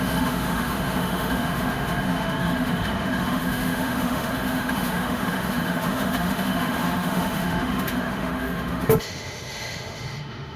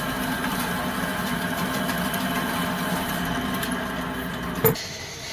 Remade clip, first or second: first